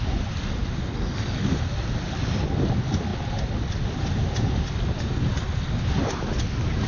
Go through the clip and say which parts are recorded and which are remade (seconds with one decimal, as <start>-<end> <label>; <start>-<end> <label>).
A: 0.0-6.9 recorded